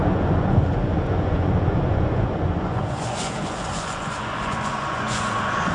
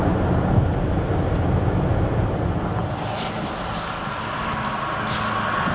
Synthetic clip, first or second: first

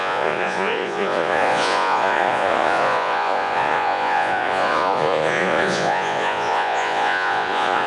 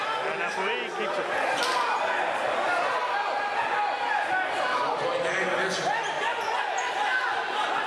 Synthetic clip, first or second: first